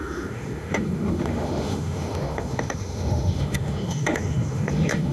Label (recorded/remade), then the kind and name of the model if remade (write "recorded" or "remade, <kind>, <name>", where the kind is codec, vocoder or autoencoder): remade, autoencoder, DAC-VAE